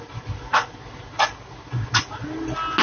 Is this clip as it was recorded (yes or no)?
yes